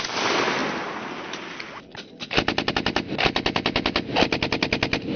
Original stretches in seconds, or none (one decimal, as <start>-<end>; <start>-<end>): 0.0-5.2